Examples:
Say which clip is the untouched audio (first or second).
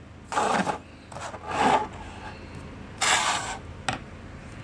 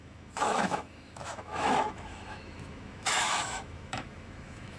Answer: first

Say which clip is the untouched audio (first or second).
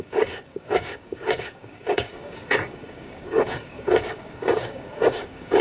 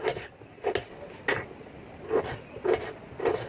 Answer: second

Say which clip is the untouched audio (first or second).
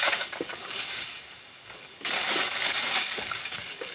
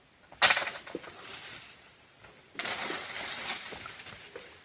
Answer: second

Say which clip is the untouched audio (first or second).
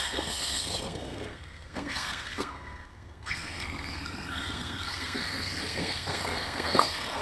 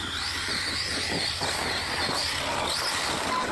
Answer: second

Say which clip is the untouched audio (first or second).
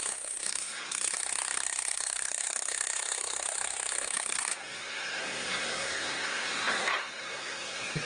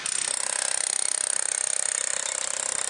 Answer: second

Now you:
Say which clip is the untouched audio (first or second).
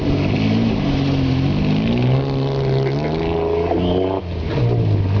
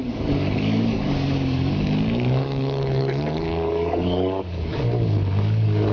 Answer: first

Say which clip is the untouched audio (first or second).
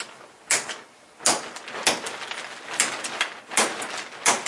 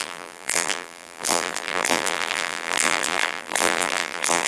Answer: first